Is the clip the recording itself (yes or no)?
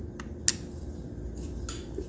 yes